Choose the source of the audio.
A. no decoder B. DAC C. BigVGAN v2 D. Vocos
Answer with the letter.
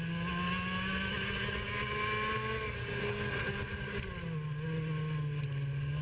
A